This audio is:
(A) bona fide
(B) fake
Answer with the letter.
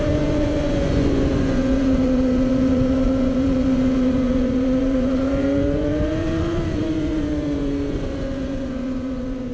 B